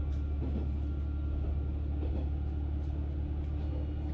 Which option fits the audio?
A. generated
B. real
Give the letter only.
B